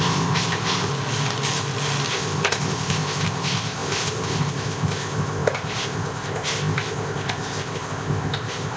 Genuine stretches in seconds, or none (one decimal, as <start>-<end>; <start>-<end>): 0.9-2.1